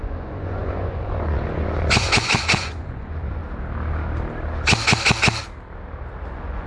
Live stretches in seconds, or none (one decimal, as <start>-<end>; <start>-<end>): 3.4-6.3

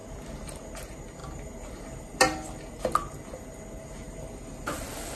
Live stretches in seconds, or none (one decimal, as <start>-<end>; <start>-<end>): 0.0-5.2

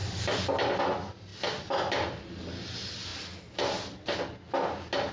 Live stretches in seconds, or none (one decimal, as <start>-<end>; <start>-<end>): 0.8-5.1